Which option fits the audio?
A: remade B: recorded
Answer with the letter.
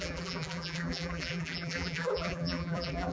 A